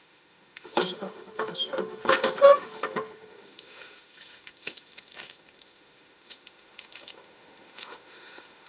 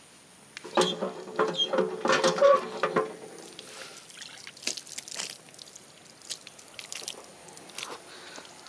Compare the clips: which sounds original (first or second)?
second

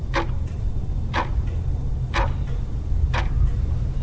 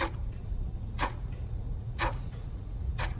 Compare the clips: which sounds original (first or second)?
first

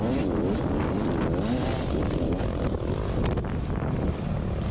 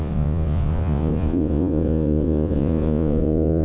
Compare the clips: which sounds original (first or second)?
first